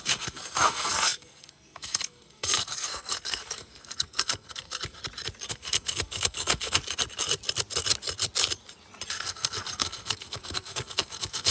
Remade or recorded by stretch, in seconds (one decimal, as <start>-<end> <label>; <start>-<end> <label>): 0.0-5.0 remade; 5.0-5.5 recorded; 5.5-6.8 remade; 6.8-9.1 recorded; 9.1-11.5 remade